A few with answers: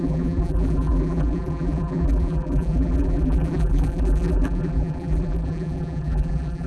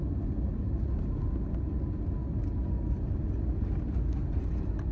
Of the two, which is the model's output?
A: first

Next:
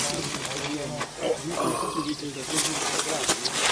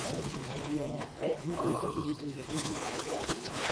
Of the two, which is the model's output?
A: second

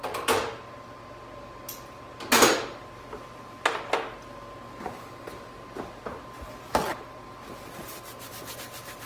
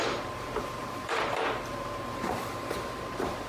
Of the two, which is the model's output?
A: second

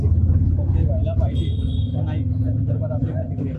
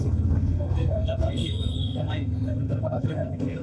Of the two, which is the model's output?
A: second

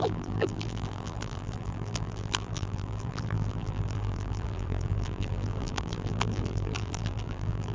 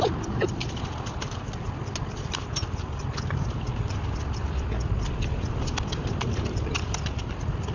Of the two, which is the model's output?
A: first